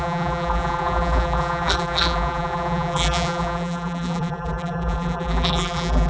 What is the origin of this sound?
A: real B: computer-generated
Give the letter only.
B